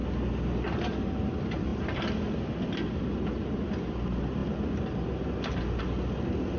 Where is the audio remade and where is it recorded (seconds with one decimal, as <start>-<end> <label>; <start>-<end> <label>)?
0.0-6.6 recorded